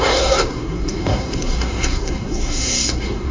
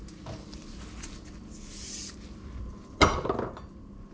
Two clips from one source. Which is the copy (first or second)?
first